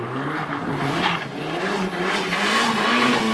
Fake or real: real